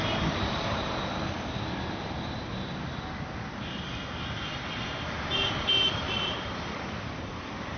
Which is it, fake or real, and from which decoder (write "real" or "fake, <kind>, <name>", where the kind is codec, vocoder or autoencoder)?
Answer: fake, vocoder, BigVGAN v2